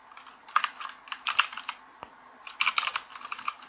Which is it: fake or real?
real